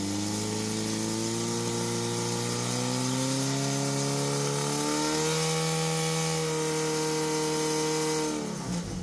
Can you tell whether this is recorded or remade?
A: recorded